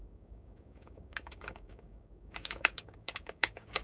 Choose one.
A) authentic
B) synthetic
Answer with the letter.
B